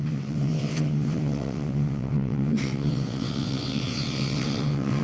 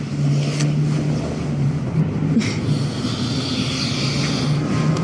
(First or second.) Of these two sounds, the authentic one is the second